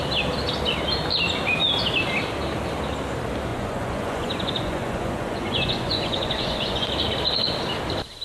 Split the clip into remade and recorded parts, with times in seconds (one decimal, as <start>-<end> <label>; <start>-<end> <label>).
0.0-3.5 recorded; 3.5-6.9 remade; 6.9-8.2 recorded